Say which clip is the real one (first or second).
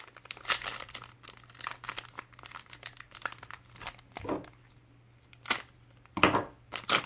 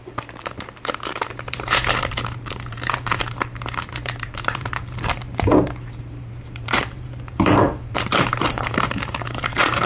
first